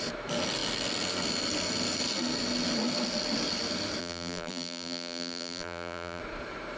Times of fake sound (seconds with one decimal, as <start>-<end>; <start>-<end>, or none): 4.0-6.2